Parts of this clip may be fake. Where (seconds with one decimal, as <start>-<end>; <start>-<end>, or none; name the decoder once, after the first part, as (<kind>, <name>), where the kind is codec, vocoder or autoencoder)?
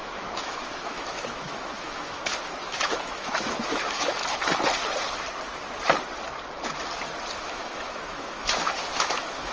0.0-4.2 (autoencoder, DAC-VAE); 7.3-9.5